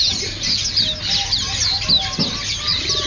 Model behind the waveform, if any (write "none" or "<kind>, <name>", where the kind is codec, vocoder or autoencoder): none